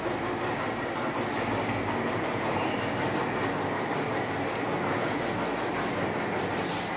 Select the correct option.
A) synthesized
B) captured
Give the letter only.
B